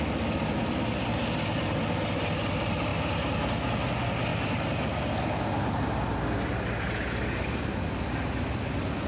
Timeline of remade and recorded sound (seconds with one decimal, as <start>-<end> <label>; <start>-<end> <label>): 0.0-9.1 recorded